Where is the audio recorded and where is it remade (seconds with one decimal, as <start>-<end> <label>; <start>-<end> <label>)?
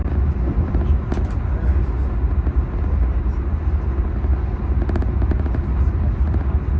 0.0-6.8 recorded